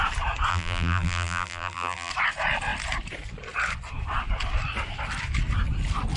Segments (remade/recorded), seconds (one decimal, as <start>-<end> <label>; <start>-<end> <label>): 0.0-0.5 recorded; 0.5-2.1 remade; 2.1-6.2 recorded